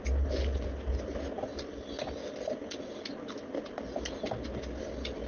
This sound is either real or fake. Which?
real